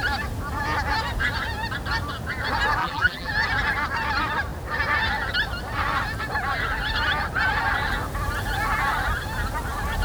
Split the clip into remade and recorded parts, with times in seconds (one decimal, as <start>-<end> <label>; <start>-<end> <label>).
0.0-2.8 recorded; 2.8-3.3 remade; 3.3-10.0 recorded